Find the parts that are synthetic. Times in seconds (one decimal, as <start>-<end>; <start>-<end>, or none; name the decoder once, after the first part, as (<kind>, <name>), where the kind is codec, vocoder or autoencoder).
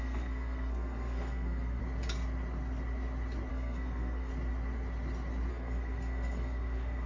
0.0-1.8 (codec, SNAC); 3.5-4.3; 5.5-7.1